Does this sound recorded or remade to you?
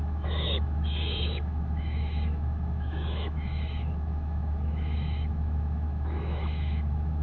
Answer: remade